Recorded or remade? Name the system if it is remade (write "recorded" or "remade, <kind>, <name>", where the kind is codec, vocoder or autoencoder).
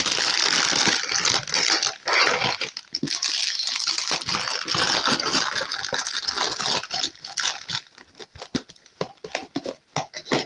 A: recorded